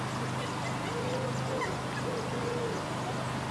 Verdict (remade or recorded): recorded